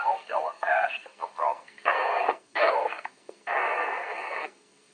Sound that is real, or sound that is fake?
fake